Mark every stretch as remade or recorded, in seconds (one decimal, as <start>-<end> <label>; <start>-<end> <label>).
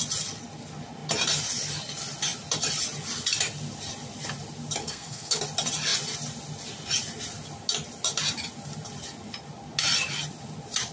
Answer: 0.0-4.8 recorded; 4.8-5.4 remade; 5.4-10.9 recorded